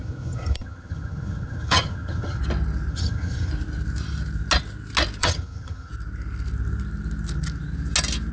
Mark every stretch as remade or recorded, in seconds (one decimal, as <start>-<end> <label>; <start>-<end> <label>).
0.0-2.4 remade; 2.4-2.9 recorded; 2.9-3.5 remade; 3.5-5.2 recorded; 5.2-5.9 remade; 5.9-8.3 recorded